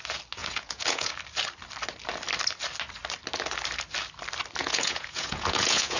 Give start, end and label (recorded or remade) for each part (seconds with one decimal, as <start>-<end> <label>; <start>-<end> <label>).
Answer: 0.0-0.4 recorded; 0.4-1.1 remade; 1.1-4.6 recorded; 4.6-6.0 remade